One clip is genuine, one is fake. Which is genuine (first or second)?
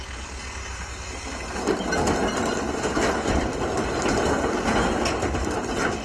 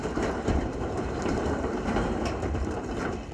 first